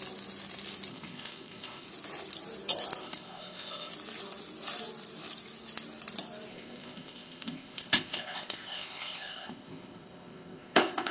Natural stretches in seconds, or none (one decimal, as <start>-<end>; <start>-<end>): 0.0-0.9; 1.9-3.0; 3.9-6.5